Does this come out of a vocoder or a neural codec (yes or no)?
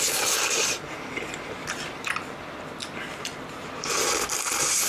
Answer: no